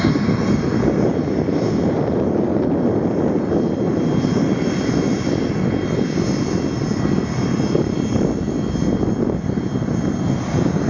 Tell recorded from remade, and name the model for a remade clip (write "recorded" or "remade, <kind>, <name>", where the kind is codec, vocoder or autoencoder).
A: recorded